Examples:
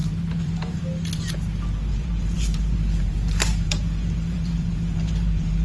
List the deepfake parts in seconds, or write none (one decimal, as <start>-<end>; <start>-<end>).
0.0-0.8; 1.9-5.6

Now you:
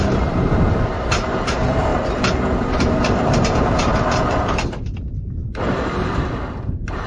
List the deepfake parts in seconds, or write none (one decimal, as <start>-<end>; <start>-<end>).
0.0-1.9; 2.5-7.1

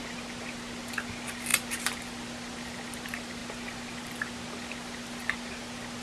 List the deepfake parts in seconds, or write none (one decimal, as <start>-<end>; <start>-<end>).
none

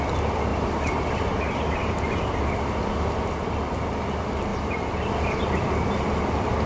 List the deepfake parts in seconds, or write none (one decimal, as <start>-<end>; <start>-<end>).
0.5-2.8

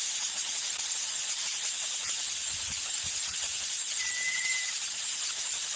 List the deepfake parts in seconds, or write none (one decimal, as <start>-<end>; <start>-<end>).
1.4-4.9